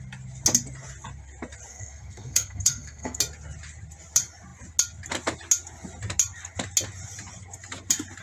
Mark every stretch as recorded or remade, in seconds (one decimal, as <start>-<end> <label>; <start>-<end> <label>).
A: 0.0-1.7 recorded; 1.7-3.2 remade; 3.2-8.2 recorded